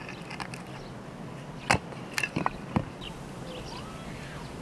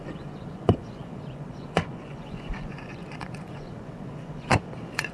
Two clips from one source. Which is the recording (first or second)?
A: first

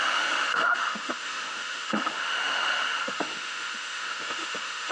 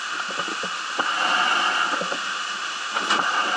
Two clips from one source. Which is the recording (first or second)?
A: second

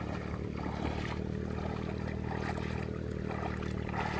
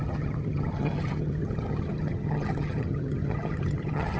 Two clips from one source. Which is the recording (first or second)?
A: first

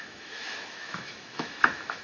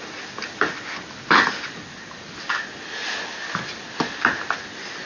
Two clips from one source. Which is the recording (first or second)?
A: second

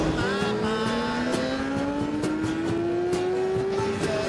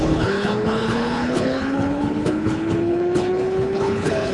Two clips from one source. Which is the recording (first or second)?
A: first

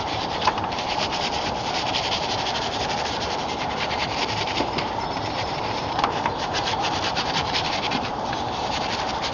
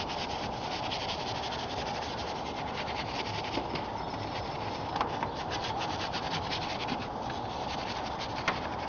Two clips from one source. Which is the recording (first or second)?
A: second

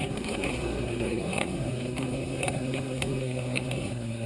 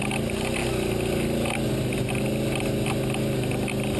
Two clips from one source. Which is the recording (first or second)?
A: second